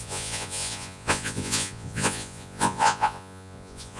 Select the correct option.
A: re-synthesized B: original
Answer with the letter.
A